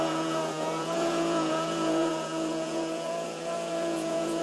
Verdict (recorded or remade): remade